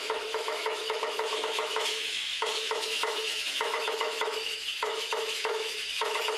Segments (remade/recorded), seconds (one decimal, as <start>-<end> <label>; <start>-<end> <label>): 0.0-6.4 remade